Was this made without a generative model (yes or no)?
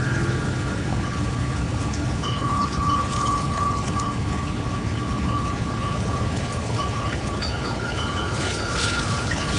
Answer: no